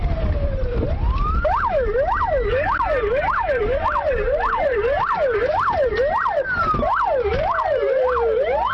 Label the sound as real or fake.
fake